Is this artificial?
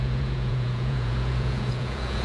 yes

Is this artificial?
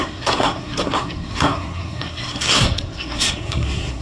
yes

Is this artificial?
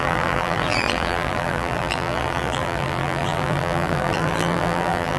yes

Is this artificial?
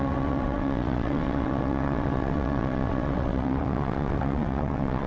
yes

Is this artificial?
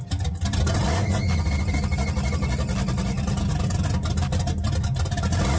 no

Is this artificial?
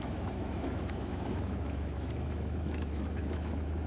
yes